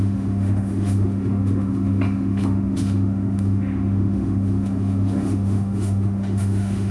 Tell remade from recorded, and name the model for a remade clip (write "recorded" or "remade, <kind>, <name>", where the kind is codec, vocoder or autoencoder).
remade, autoencoder, DAC-VAE